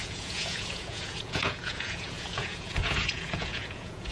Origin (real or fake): fake